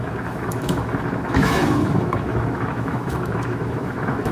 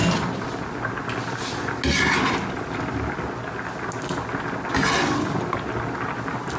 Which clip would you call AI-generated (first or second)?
first